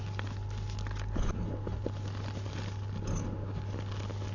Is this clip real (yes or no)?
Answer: yes